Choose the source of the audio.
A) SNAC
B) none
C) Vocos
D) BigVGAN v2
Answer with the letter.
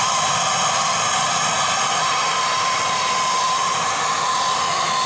B